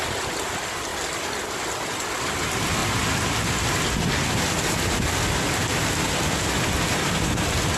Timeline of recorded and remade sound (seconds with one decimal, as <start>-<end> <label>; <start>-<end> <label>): 0.0-7.8 recorded